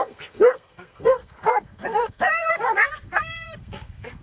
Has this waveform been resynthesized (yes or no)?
yes